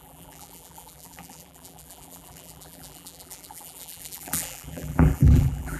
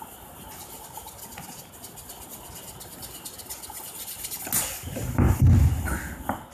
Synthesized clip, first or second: first